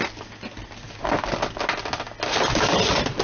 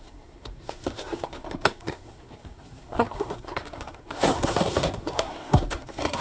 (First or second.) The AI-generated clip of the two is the second